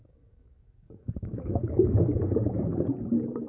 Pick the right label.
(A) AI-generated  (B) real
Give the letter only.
A